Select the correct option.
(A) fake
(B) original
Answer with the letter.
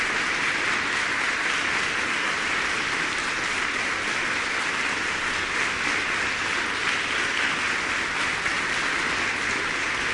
B